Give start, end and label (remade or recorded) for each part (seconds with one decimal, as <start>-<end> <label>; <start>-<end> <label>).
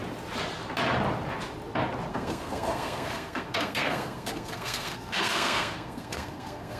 0.0-2.1 recorded; 2.1-6.8 remade